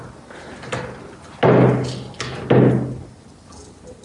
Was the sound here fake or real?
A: real